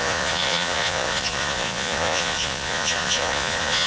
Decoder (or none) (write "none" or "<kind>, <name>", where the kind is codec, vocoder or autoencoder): vocoder, Vocos